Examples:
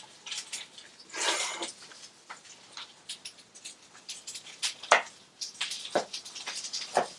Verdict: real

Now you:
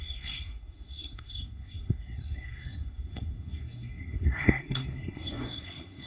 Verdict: fake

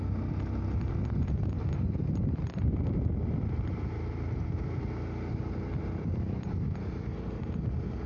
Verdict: real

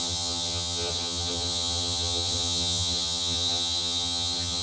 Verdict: fake